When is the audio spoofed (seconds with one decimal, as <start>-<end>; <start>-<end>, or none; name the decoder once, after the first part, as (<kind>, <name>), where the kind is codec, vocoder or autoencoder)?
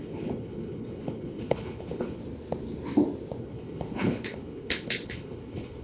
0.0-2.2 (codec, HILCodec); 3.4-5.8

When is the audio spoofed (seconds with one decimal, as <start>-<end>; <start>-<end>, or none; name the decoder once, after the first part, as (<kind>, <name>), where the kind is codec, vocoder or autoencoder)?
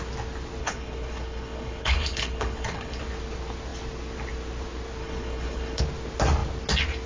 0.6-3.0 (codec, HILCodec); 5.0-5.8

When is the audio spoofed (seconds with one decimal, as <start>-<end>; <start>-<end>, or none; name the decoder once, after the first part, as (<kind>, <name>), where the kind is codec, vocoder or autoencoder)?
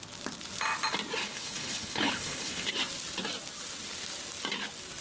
1.2-2.7 (codec, HILCodec)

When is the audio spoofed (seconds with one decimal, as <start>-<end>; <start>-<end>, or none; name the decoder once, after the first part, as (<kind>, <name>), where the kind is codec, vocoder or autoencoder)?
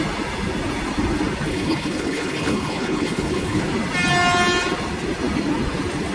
1.5-3.6 (codec, HILCodec)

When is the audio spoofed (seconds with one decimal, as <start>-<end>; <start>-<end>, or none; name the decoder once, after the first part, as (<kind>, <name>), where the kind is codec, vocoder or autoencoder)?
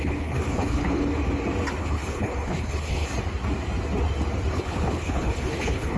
0.0-1.1 (codec, HILCodec); 1.8-3.1; 4.5-6.0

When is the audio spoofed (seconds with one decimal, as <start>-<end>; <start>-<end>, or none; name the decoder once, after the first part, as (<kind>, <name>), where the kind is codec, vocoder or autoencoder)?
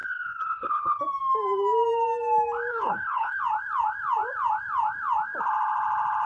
0.0-1.0 (codec, HILCodec); 2.7-3.4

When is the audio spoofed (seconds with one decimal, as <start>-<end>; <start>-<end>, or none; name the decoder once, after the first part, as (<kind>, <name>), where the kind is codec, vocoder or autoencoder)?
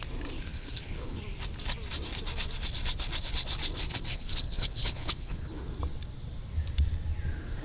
0.5-1.2 (codec, HILCodec); 4.1-5.6